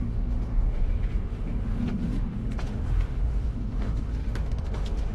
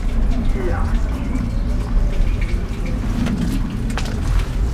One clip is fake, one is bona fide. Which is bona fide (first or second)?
second